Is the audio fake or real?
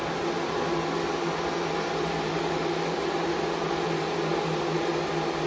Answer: real